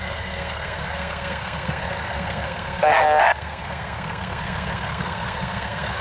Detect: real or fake fake